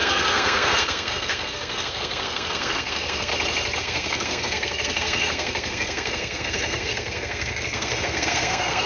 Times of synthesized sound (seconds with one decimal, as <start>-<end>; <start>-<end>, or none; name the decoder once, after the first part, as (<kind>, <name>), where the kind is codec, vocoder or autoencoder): 0.0-3.3 (codec, SNAC); 3.8-8.9